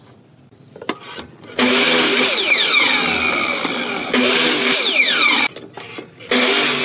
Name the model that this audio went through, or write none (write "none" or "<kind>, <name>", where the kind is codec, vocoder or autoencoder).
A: none